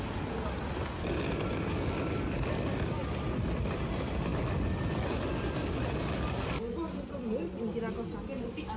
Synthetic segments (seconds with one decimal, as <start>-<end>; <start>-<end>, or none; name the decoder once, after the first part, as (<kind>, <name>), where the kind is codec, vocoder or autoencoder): none